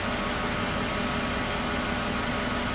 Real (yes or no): yes